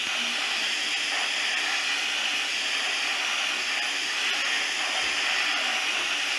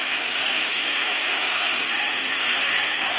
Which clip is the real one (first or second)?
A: first